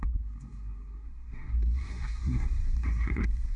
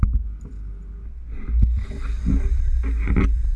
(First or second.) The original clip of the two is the second